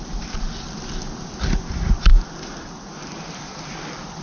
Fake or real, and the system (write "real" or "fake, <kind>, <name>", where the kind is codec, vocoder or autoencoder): real